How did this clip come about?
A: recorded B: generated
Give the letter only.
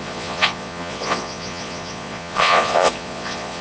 B